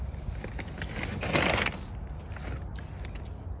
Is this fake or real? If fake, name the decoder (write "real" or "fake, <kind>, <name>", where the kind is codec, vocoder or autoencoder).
real